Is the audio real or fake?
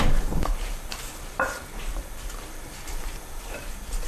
fake